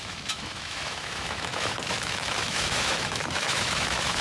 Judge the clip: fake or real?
fake